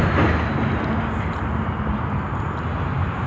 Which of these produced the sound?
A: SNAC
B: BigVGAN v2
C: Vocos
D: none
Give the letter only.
D